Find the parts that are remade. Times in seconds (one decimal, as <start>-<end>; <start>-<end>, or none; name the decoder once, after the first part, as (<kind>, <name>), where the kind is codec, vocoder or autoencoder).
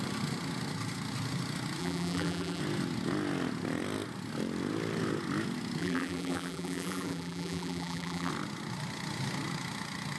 1.8-2.6 (vocoder, BigVGAN v2); 5.8-8.3